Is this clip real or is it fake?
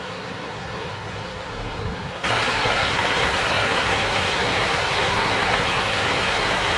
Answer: fake